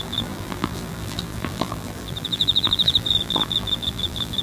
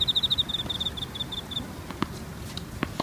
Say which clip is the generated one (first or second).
first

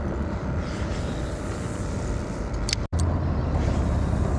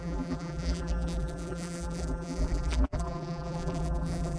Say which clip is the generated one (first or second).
second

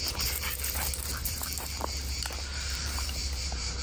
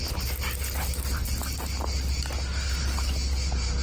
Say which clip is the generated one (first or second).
first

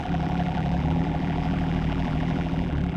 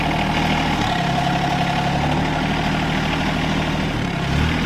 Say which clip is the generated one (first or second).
first